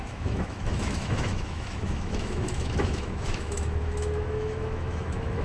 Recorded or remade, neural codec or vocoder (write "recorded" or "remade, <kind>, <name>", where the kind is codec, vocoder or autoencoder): remade, autoencoder, DAC-VAE